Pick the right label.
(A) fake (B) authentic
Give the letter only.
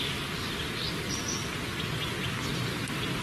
B